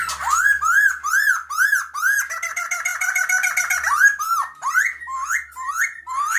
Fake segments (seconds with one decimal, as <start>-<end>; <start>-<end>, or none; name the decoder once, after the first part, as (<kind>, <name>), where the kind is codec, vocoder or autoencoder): none